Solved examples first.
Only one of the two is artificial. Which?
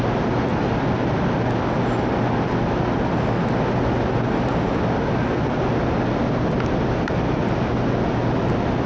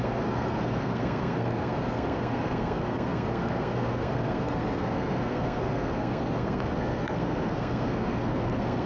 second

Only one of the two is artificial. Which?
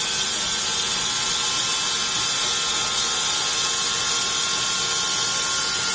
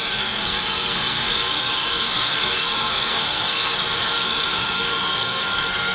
second